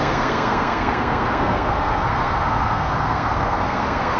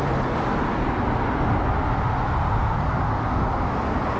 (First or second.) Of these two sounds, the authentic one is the second